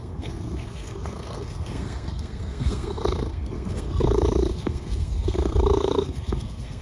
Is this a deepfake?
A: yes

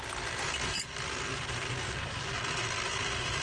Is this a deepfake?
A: yes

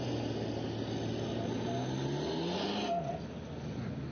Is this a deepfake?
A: no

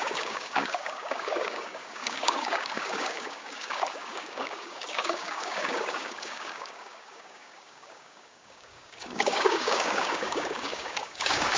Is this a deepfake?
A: yes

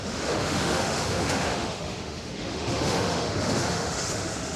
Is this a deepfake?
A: yes